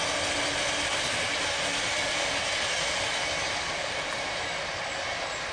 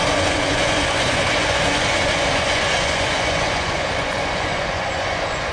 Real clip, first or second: first